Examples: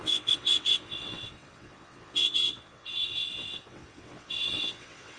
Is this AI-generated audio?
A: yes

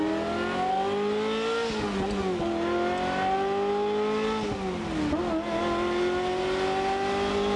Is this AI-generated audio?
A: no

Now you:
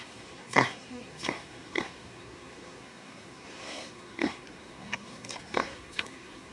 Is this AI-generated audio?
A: yes